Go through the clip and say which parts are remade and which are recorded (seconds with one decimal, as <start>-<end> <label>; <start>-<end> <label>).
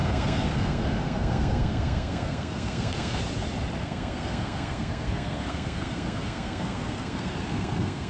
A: 0.0-3.2 remade; 3.2-3.8 recorded; 3.8-8.1 remade